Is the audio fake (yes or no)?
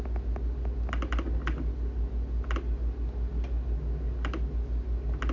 no